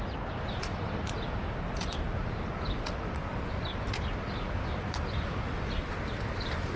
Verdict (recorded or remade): recorded